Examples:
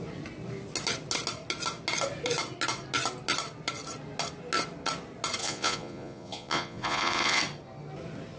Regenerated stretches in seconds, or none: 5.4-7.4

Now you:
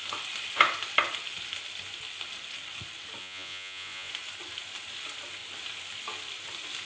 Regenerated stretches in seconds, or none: 3.2-4.1

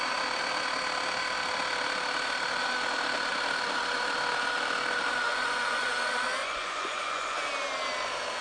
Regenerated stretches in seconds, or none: 5.3-5.9; 6.4-7.5